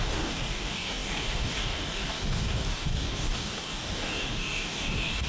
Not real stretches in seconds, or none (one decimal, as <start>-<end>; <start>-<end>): 0.0-5.3

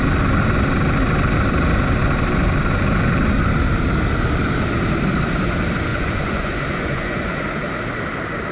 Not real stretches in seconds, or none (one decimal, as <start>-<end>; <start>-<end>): 5.9-7.4

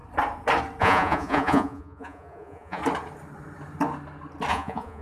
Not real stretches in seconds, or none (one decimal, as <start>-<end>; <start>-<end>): 0.8-2.8; 4.5-5.0

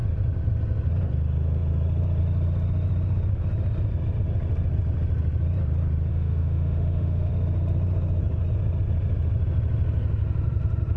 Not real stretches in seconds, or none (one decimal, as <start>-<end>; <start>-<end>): 6.1-7.3

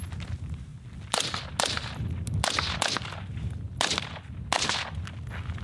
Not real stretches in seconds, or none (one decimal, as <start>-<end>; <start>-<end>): none

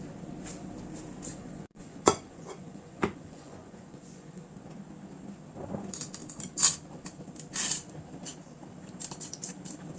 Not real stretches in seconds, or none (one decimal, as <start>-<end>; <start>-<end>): 1.3-4.4

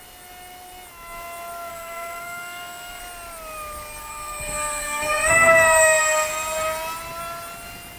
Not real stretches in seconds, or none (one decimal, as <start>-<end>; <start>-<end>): 1.7-3.0; 4.0-6.0